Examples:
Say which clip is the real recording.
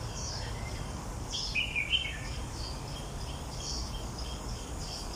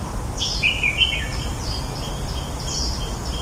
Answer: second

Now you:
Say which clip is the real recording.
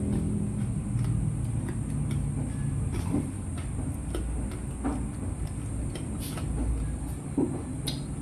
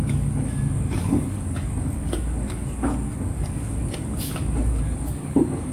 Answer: first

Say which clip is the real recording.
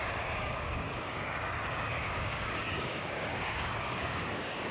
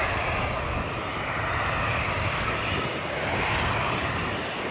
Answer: second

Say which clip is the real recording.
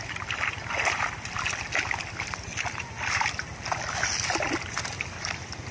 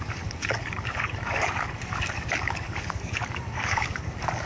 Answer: first